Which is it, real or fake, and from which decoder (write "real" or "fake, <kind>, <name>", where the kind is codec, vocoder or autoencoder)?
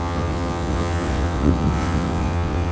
fake, vocoder, WaveNeXt